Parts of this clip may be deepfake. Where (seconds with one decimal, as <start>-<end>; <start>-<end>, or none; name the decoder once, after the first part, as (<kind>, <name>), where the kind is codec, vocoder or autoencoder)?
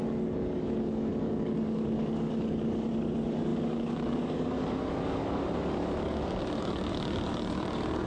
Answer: 0.0-8.1 (codec, DAC)